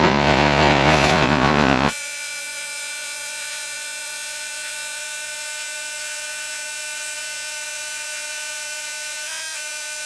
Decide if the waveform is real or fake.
fake